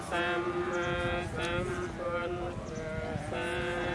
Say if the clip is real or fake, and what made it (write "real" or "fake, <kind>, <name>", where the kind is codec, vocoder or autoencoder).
real